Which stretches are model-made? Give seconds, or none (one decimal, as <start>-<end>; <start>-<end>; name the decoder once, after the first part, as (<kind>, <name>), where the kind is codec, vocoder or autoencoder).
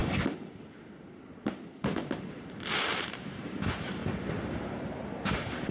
2.9-4.0 (vocoder, BigVGAN v2); 4.5-5.7